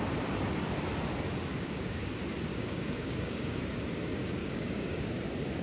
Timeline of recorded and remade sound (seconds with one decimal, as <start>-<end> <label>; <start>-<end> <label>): 0.0-1.5 recorded; 1.5-2.1 remade; 2.1-2.5 recorded; 2.5-3.6 remade; 3.6-4.4 recorded; 4.4-5.1 remade; 5.1-5.6 recorded